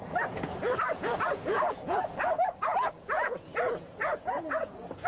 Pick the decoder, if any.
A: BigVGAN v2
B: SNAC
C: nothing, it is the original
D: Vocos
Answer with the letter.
D